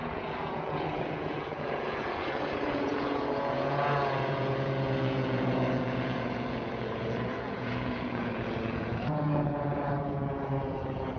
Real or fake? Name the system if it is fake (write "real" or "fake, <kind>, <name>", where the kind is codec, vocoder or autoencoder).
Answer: fake, vocoder, Vocos